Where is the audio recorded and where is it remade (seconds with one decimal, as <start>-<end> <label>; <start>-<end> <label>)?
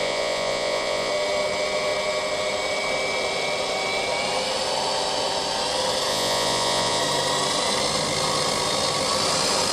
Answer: 0.0-1.1 remade; 1.1-6.1 recorded; 6.1-7.0 remade; 7.0-9.7 recorded